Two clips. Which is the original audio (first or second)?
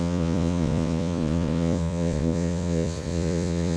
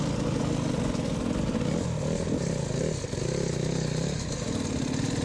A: second